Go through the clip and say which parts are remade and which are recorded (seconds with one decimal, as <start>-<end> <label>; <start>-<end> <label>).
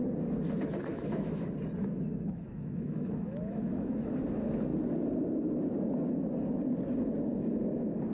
0.0-0.9 recorded; 0.9-1.4 remade; 1.4-1.8 recorded; 1.8-4.2 remade; 4.2-8.1 recorded